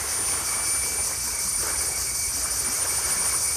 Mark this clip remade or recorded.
recorded